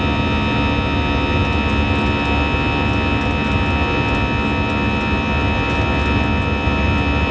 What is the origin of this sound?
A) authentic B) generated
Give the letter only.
A